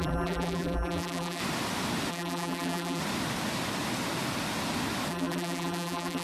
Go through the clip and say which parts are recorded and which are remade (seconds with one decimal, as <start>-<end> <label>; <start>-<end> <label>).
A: 0.0-1.4 remade; 1.4-2.1 recorded; 2.1-3.0 remade; 3.0-5.1 recorded; 5.1-6.2 remade